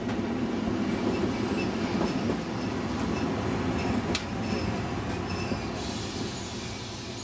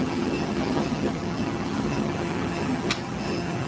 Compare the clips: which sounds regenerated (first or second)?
second